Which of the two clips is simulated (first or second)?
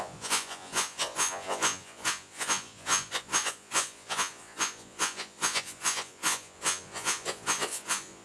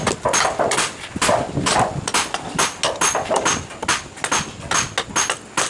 first